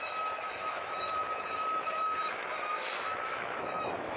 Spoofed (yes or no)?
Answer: yes